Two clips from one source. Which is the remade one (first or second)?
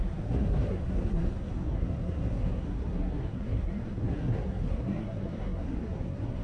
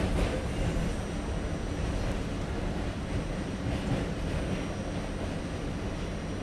first